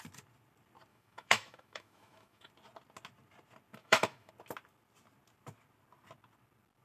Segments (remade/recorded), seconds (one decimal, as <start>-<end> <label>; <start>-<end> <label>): 0.0-0.9 recorded; 0.9-2.5 remade; 2.5-3.8 recorded; 3.8-4.3 remade; 4.3-6.8 recorded